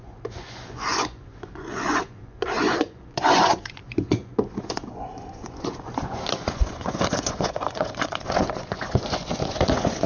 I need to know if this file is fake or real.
fake